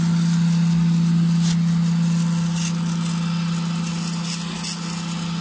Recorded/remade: recorded